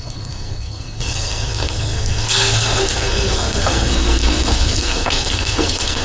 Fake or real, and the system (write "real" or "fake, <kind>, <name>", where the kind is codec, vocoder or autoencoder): fake, codec, SNAC